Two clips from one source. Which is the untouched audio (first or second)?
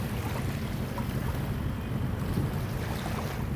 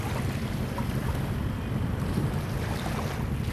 first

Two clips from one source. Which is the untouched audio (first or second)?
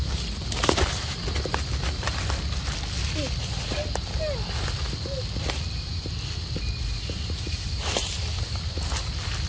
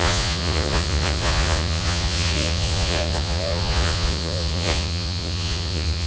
first